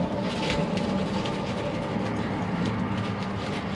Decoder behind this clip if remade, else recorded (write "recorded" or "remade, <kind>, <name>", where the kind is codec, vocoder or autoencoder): recorded